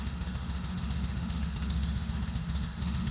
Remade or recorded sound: remade